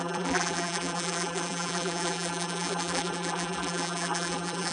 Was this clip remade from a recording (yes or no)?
yes